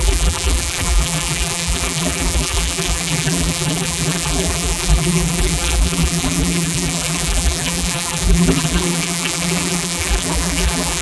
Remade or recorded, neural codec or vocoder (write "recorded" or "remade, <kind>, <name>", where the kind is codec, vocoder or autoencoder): remade, vocoder, BigVGAN v2